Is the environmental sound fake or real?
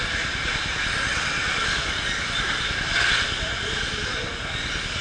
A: real